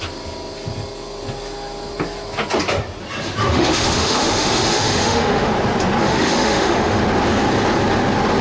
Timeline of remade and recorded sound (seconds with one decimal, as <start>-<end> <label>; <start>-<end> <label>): 0.0-3.4 recorded; 3.4-5.5 remade; 5.5-6.0 recorded; 6.0-7.0 remade; 7.0-8.4 recorded